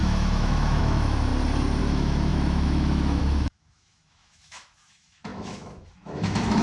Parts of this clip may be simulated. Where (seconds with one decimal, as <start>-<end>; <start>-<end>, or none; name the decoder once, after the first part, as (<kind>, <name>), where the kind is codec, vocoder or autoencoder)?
0.0-1.3 (autoencoder, DAC-VAE); 1.8-6.6